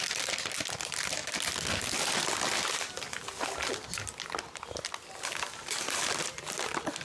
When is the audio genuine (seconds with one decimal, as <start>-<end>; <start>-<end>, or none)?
0.0-7.0